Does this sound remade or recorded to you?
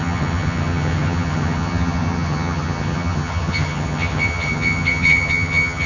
remade